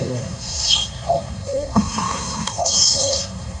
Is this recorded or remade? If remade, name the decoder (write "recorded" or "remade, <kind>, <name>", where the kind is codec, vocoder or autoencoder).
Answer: remade, codec, SNAC